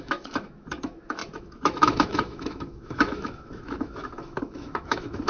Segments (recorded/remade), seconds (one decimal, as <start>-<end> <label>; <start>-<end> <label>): 0.0-5.3 remade